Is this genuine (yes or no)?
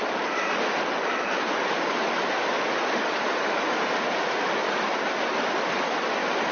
yes